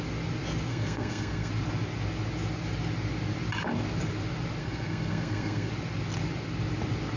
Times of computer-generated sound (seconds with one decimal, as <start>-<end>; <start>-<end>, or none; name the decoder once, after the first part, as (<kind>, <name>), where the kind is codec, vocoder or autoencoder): 0.7-1.5 (codec, SNAC); 4.6-5.7